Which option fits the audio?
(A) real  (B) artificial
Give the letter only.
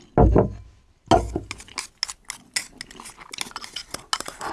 A